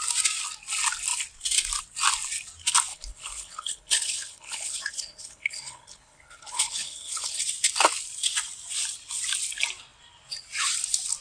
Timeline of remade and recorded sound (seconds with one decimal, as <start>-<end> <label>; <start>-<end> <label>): 0.0-2.9 recorded; 2.9-7.4 remade; 7.4-11.2 recorded